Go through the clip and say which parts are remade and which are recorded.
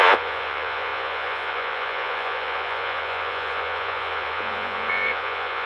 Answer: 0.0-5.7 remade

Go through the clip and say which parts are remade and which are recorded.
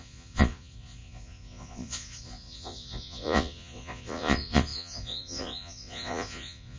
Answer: 0.0-6.8 remade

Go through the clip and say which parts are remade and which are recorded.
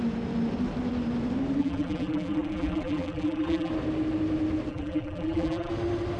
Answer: 0.0-1.6 recorded; 1.6-3.7 remade; 3.7-4.7 recorded; 4.7-5.7 remade; 5.7-6.2 recorded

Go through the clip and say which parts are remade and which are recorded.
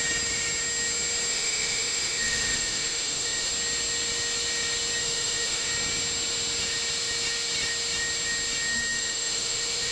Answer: 0.0-1.3 recorded; 1.3-3.5 remade; 3.5-5.0 recorded; 5.0-5.7 remade; 5.7-8.7 recorded; 8.7-9.9 remade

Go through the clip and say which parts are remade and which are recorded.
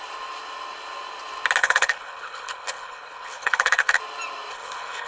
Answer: 0.0-1.6 recorded; 1.6-4.0 remade; 4.0-4.5 recorded; 4.5-5.1 remade